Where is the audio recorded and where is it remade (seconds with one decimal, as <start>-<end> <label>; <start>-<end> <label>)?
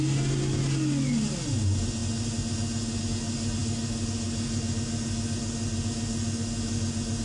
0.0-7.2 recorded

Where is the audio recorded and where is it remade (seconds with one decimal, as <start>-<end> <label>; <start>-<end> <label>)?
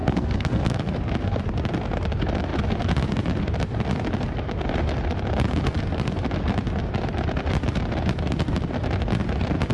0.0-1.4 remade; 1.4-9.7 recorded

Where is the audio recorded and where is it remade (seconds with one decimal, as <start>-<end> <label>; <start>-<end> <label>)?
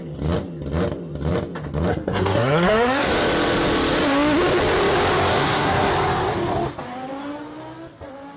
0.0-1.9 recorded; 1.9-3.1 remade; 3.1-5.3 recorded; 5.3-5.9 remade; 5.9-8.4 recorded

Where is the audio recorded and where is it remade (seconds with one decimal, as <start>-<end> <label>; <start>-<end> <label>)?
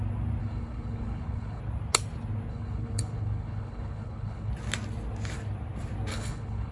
0.0-0.4 recorded; 0.4-1.6 remade; 1.6-2.5 recorded; 2.5-4.5 remade; 4.5-6.1 recorded; 6.1-6.7 remade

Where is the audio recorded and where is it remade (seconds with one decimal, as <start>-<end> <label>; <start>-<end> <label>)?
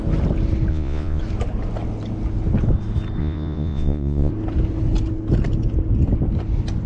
0.0-0.7 recorded; 0.7-1.2 remade; 1.2-3.2 recorded; 3.2-4.3 remade; 4.3-6.9 recorded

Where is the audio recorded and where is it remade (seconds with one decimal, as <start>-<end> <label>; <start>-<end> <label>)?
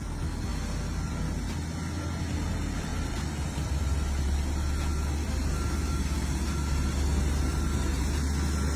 0.0-2.9 recorded; 2.9-4.0 remade; 4.0-7.5 recorded; 7.5-8.0 remade; 8.0-8.8 recorded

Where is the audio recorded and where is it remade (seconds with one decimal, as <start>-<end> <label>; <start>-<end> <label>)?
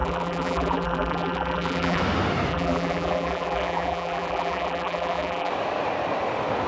0.0-2.0 remade; 2.0-2.5 recorded; 2.5-5.5 remade; 5.5-6.7 recorded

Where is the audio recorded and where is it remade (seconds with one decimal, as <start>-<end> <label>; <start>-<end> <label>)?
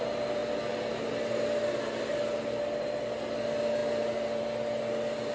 0.0-5.3 recorded